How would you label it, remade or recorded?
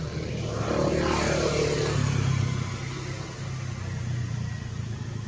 recorded